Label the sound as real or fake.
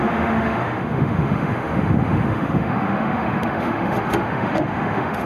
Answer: fake